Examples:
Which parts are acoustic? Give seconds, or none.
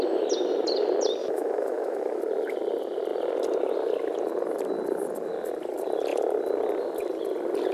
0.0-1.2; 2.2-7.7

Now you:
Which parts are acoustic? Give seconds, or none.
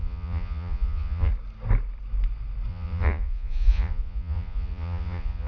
1.3-2.7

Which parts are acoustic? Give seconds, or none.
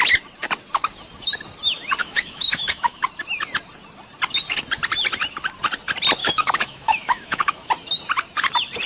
0.0-2.0; 3.0-6.2; 7.7-8.9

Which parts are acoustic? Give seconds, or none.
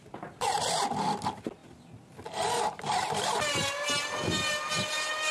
0.0-5.3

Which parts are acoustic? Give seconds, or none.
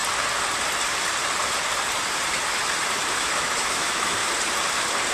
0.0-3.1; 4.2-5.1